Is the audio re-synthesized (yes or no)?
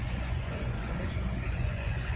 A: yes